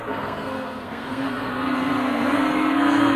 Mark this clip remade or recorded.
remade